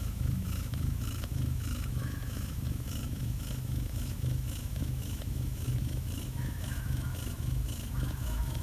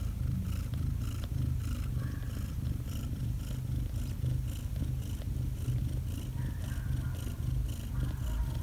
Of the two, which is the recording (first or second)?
second